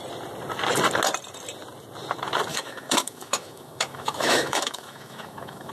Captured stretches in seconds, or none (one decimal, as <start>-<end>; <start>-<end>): 0.0-2.5